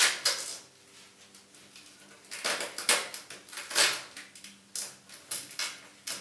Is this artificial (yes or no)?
no